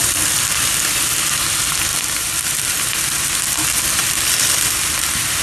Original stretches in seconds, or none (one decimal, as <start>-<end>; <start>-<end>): 1.0-1.9